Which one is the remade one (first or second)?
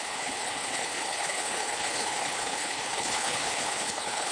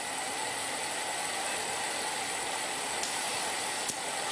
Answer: first